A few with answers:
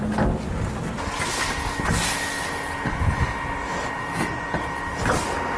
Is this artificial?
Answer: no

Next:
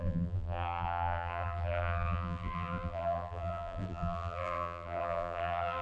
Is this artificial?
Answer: yes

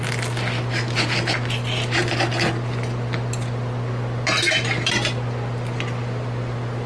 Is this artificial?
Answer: no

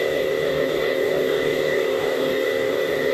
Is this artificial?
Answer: yes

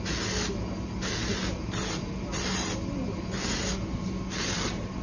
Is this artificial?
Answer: no